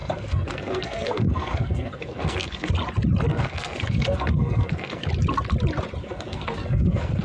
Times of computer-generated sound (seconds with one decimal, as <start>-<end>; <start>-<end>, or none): 0.0-2.7; 3.3-5.1; 6.0-7.2